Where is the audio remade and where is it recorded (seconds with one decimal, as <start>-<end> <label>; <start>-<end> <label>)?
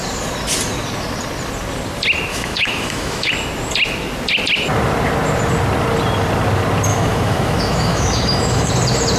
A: 0.0-2.3 recorded; 2.3-3.3 remade; 3.3-6.9 recorded; 6.9-8.7 remade; 8.7-9.2 recorded